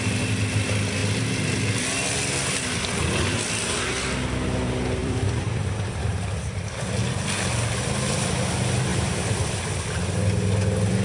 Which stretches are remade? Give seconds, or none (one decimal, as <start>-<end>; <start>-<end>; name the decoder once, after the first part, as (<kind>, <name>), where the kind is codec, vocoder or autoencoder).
5.0-7.1 (vocoder, BigVGAN v2); 8.9-10.0